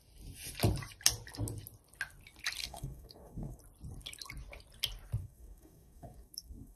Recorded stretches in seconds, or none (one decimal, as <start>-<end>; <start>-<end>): 0.0-2.6; 3.6-5.2